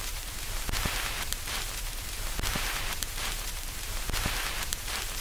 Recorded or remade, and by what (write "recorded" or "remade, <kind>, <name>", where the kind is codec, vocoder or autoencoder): remade, vocoder, BigVGAN v2